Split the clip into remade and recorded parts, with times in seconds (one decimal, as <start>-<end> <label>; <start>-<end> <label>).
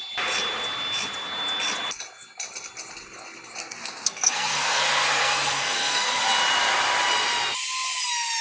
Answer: 0.0-3.6 recorded; 3.6-4.8 remade; 4.8-5.2 recorded; 5.2-6.2 remade; 6.2-8.4 recorded